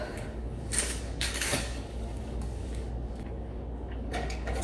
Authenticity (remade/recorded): remade